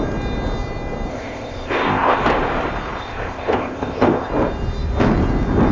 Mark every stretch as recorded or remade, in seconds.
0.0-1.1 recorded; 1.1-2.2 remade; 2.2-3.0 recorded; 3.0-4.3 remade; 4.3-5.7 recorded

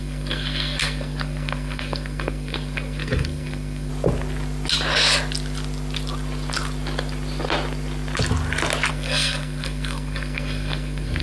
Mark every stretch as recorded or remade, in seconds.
0.0-3.9 remade; 3.9-8.9 recorded; 8.9-11.2 remade